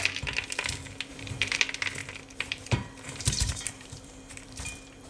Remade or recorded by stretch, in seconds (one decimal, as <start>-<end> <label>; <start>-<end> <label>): 0.0-1.1 recorded; 1.1-1.6 remade; 1.6-2.0 recorded; 2.0-5.1 remade